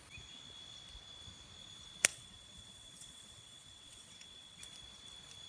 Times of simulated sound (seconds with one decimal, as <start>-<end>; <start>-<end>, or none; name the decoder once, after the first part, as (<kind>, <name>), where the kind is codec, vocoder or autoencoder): 2.1-4.6 (vocoder, WaveNeXt)